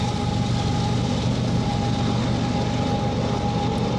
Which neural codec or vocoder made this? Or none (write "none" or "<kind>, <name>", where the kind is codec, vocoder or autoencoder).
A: none